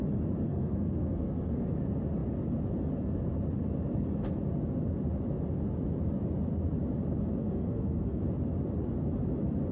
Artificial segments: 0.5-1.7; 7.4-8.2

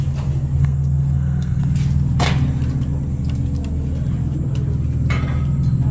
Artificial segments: 0.6-1.6

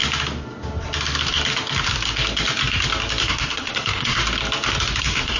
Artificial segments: 3.2-4.2; 5.0-5.4

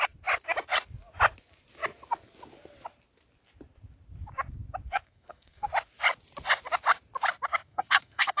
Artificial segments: 4.9-5.7; 7.5-8.4